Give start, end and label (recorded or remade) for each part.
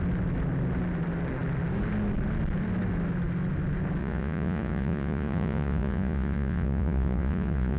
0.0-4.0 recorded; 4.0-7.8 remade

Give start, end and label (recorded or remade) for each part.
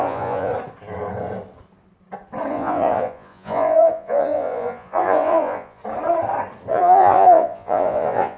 0.0-0.5 remade; 0.5-2.5 recorded; 2.5-5.8 remade; 5.8-6.7 recorded; 6.7-8.4 remade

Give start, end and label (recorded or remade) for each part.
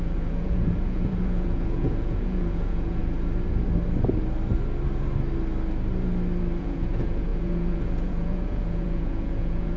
0.0-3.0 remade; 3.0-6.6 recorded; 6.6-9.8 remade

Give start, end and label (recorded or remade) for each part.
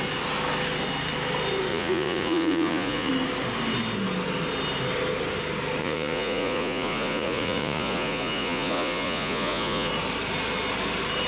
0.0-1.7 recorded; 1.7-3.1 remade; 3.1-5.8 recorded; 5.8-9.9 remade; 9.9-11.3 recorded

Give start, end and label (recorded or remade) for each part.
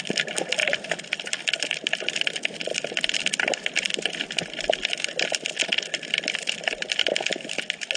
0.0-8.0 recorded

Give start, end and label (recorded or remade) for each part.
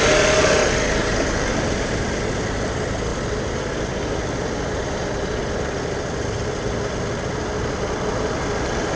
0.0-9.0 recorded